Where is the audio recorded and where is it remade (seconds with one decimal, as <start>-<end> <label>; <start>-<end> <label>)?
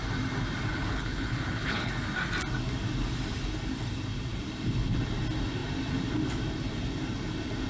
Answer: 0.0-0.7 recorded; 0.7-1.9 remade; 1.9-7.7 recorded